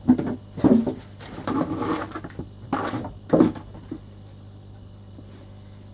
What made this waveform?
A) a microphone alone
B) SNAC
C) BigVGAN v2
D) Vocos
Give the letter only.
A